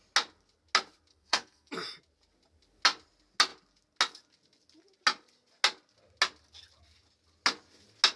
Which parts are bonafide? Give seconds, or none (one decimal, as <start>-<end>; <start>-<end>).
0.0-1.1; 1.7-8.2

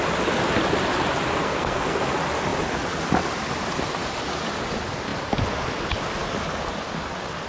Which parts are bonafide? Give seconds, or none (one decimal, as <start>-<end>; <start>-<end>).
0.0-1.4; 2.0-7.5

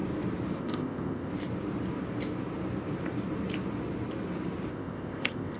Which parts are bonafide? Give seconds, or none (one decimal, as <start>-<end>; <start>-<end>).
0.0-0.6; 1.3-4.7

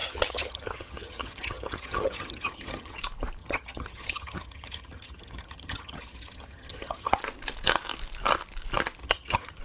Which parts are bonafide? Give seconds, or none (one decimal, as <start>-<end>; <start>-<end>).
3.0-3.4; 7.2-9.0

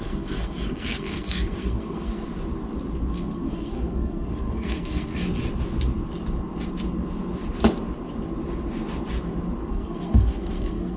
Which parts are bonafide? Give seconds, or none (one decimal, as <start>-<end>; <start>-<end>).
2.3-3.1; 5.1-9.7

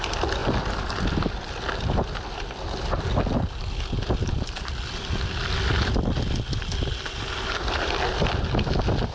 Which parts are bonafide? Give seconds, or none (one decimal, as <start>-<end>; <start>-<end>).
0.0-9.1

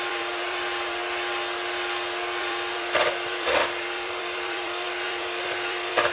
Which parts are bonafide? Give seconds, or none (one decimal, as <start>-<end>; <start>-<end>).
1.0-2.4